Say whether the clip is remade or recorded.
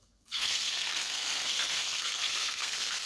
remade